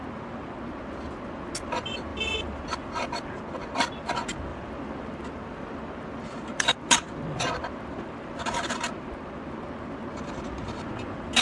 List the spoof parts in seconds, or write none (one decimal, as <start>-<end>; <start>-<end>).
2.1-2.6; 4.5-9.1